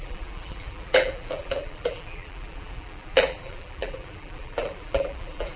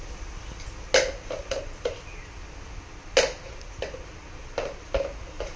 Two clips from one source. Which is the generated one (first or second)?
first